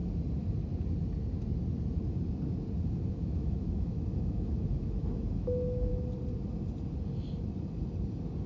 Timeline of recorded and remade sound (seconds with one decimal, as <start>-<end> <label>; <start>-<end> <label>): 0.0-3.1 recorded; 3.1-5.9 remade; 5.9-8.5 recorded